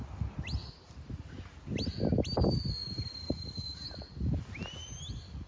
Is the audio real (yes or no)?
yes